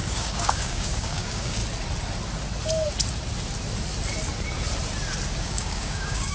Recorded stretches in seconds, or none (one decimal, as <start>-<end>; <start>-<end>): 1.6-5.4